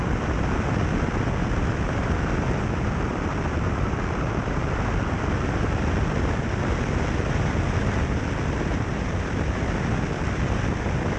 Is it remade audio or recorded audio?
recorded